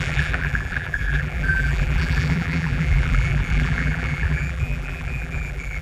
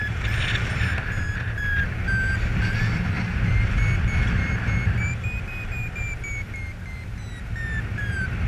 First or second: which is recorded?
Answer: second